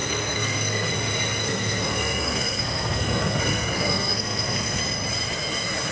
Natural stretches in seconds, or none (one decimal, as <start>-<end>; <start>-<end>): 0.9-1.4; 4.8-5.9